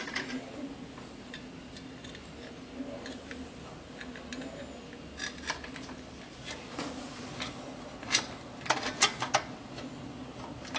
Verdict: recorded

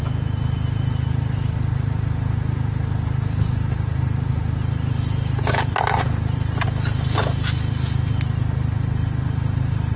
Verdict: recorded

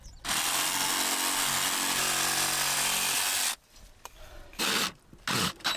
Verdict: recorded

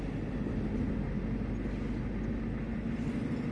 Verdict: recorded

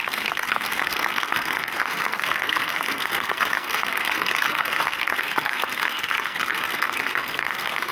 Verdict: remade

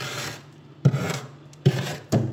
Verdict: remade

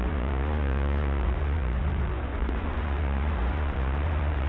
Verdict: remade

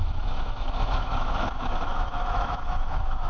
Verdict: remade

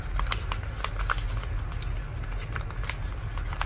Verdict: recorded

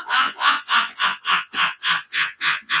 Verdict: remade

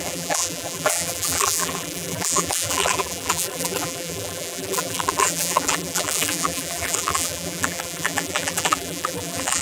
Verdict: remade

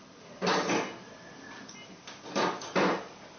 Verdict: recorded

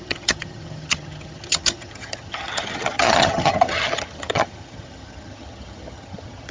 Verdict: remade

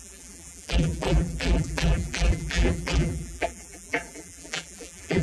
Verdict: remade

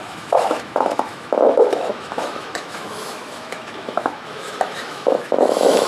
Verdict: remade